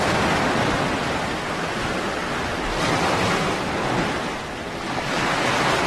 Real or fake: real